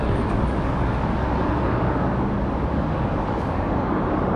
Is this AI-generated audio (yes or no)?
yes